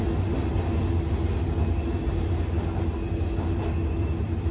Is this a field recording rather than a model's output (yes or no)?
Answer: yes